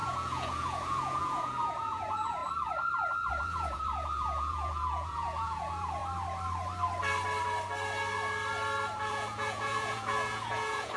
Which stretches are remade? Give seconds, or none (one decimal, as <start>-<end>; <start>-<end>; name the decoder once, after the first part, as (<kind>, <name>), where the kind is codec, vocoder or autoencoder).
0.0-2.4 (vocoder, Vocos); 3.3-6.0; 9.0-11.0